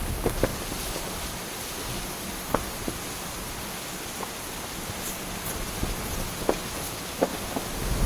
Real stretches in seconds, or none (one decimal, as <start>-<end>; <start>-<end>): 0.0-8.1

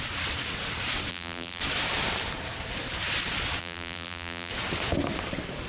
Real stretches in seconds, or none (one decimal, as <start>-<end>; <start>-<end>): 0.0-1.1; 1.6-3.6; 4.5-5.7

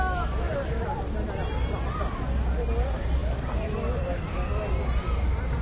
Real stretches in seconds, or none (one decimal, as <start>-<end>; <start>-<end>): 0.0-0.5; 2.0-3.2; 4.5-5.6